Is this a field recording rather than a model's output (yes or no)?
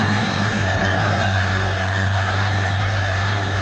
no